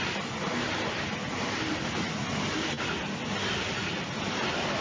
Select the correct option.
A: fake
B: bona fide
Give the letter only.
B